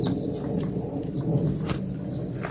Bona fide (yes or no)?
yes